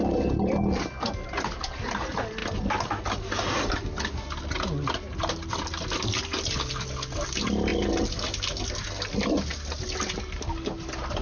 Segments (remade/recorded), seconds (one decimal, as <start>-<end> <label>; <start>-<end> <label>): 0.0-11.2 recorded